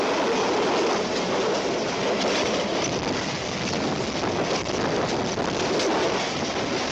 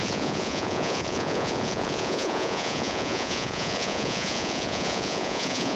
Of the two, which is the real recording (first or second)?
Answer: first